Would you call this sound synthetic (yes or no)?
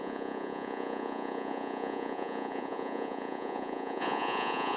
yes